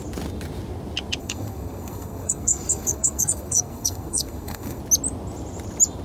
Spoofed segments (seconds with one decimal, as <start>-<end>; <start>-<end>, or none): 1.2-4.8